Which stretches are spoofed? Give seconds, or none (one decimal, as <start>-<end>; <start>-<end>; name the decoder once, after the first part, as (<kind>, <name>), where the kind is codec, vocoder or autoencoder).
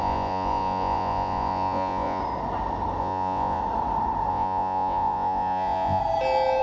0.0-2.2 (vocoder, Vocos); 3.0-3.6; 4.3-6.0